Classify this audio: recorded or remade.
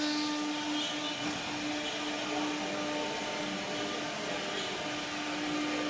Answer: recorded